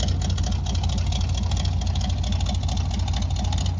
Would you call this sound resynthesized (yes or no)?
no